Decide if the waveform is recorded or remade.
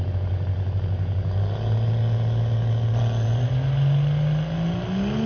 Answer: recorded